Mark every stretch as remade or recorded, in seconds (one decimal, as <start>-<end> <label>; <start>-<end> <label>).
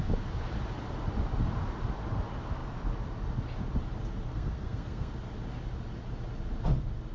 0.0-4.3 recorded; 4.3-5.1 remade; 5.1-7.1 recorded